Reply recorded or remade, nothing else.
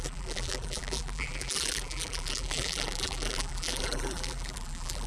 remade